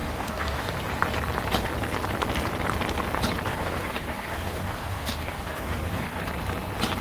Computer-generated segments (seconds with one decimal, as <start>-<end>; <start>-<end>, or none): 0.0-0.7; 3.5-6.2